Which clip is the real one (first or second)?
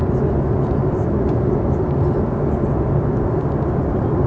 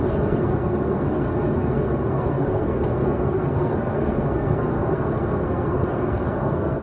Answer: first